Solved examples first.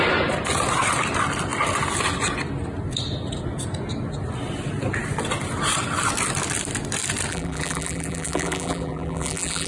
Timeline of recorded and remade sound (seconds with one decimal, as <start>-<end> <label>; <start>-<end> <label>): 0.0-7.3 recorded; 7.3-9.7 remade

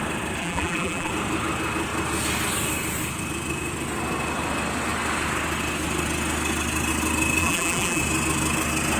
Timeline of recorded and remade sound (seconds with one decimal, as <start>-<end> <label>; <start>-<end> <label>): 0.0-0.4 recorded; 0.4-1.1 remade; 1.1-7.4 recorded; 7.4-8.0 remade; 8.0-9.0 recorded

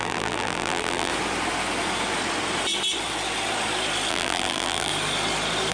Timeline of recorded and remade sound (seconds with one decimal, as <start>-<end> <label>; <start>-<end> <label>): 0.0-1.1 remade; 1.1-4.1 recorded; 4.1-4.9 remade; 4.9-5.7 recorded

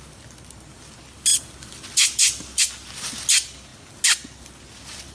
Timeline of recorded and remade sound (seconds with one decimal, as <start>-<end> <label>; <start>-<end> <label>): 0.0-1.3 recorded; 1.3-2.6 remade; 2.6-5.1 recorded

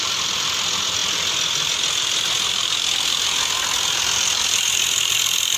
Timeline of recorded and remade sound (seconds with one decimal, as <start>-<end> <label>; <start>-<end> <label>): 0.0-1.0 remade; 1.0-3.0 recorded; 3.0-5.6 remade